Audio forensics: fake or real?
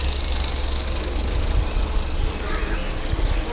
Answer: real